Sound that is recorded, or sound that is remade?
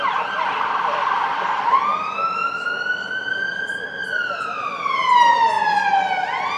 recorded